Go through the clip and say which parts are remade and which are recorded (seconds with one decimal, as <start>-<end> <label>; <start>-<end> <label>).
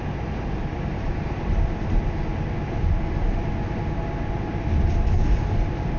0.0-6.0 recorded